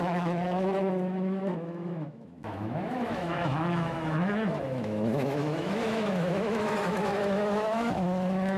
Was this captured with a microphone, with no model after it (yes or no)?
no